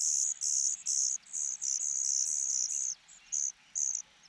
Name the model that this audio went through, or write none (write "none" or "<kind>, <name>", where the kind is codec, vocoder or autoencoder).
none